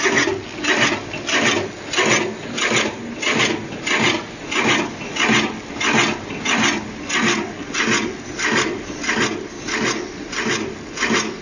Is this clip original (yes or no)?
yes